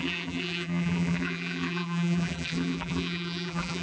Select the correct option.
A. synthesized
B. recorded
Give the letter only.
A